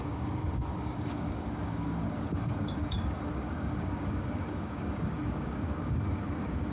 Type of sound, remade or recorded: remade